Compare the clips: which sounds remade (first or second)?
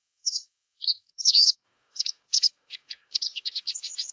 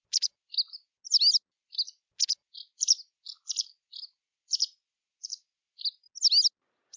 first